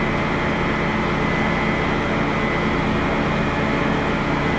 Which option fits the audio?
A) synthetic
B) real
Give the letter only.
B